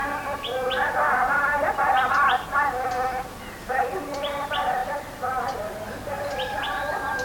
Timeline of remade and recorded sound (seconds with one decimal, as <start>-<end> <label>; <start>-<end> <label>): 0.0-7.2 recorded